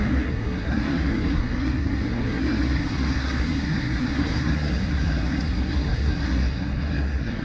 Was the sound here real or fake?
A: fake